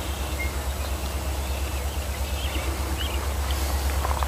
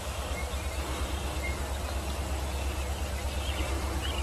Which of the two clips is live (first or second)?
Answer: first